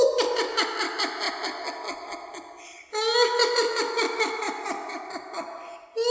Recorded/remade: recorded